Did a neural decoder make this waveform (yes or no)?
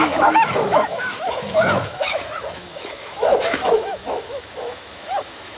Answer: yes